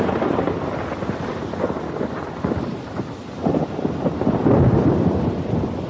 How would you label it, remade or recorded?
recorded